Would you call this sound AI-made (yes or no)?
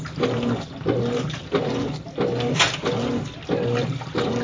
no